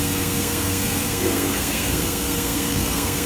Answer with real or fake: fake